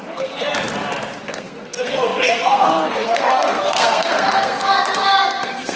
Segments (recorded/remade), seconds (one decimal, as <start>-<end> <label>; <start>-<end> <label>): 0.0-0.5 remade; 0.5-1.2 recorded; 1.2-5.8 remade